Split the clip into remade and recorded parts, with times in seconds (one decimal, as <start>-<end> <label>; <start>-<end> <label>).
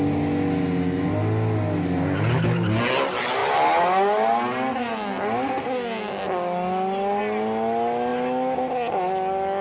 0.0-9.6 recorded